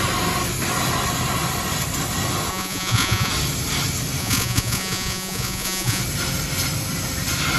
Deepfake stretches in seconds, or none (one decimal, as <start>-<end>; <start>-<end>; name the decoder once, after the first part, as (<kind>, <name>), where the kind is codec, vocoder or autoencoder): 2.5-3.3 (vocoder, Vocos); 4.2-6.0